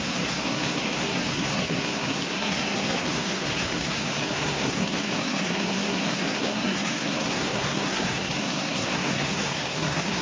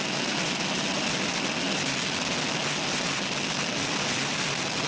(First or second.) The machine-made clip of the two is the first